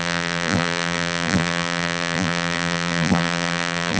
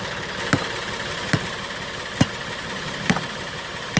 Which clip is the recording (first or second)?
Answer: second